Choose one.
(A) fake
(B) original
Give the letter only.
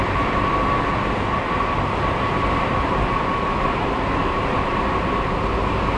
B